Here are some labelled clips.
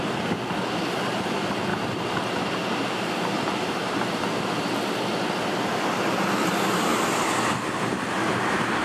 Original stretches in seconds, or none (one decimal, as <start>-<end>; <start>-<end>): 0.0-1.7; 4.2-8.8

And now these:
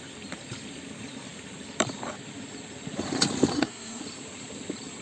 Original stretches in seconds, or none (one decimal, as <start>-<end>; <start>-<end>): 0.0-3.5; 4.0-5.0

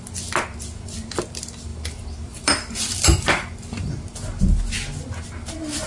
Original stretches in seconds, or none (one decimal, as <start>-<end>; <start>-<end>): 0.0-1.7; 4.6-5.9

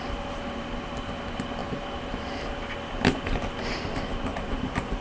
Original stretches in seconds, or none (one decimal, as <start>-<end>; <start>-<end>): 0.0-1.6; 2.6-4.3

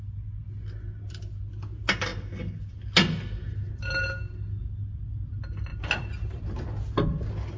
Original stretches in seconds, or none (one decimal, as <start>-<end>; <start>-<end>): 0.0-7.6